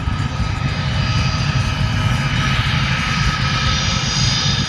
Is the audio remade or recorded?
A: recorded